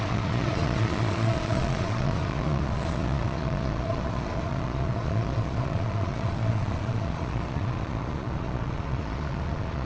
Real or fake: fake